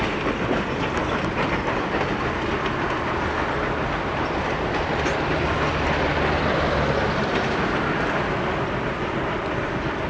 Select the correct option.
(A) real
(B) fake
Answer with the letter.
A